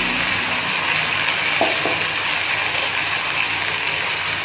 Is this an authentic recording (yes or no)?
yes